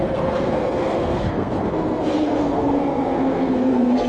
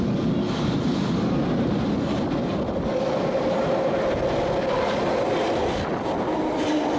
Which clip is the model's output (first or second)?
first